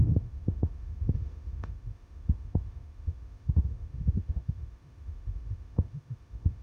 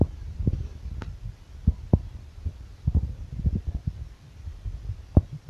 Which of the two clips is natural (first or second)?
second